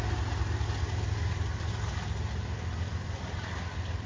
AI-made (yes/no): no